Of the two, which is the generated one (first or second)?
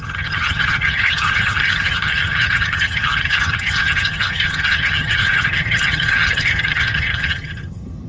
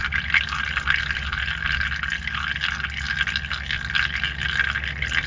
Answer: first